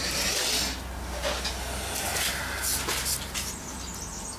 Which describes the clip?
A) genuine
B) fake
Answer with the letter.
A